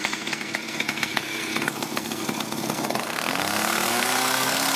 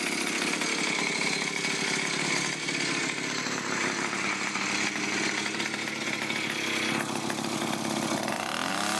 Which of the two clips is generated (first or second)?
first